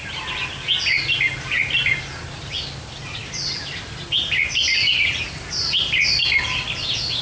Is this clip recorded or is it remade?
recorded